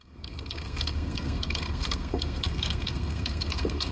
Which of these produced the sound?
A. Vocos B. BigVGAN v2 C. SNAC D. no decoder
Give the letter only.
C